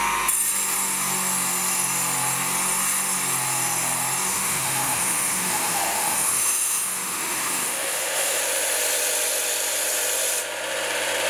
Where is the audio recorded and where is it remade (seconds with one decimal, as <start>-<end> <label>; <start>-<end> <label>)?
0.0-4.3 recorded; 4.3-8.4 remade; 8.4-11.3 recorded